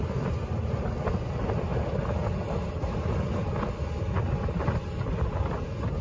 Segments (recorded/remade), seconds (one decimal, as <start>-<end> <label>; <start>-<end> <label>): 0.0-6.0 recorded